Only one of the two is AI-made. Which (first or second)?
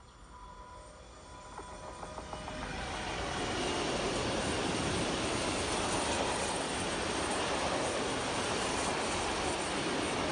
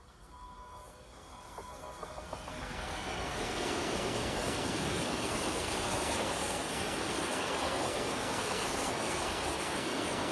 second